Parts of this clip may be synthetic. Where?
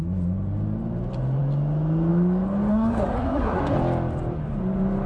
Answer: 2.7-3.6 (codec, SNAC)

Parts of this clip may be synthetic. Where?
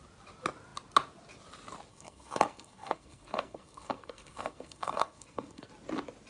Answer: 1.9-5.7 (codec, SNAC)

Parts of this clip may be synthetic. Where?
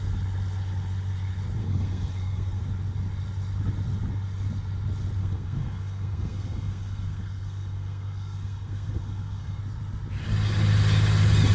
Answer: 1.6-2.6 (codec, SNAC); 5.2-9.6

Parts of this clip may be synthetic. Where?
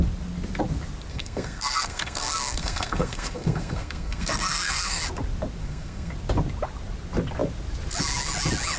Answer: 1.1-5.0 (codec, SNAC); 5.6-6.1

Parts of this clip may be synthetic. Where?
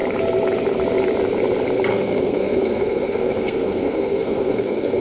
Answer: 1.9-5.0 (codec, SNAC)